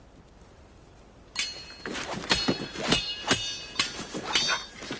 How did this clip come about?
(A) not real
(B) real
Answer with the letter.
B